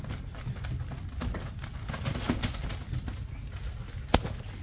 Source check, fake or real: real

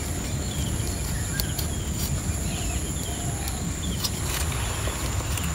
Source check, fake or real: real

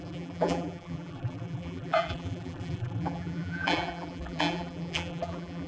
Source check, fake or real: fake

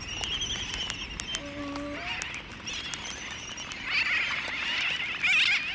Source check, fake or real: real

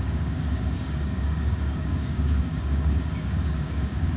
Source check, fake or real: fake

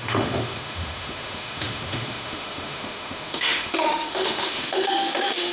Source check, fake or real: fake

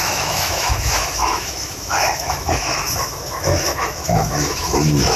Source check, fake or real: fake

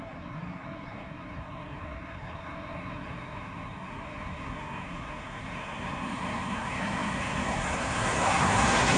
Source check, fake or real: fake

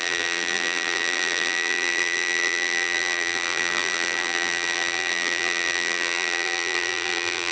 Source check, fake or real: fake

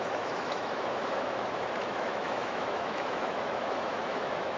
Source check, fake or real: fake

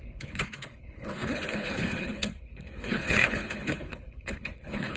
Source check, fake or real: fake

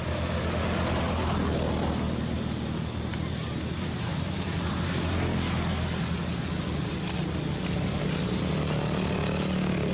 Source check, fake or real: real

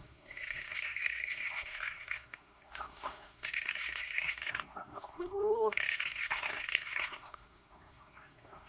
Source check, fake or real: fake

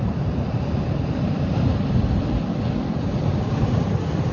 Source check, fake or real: fake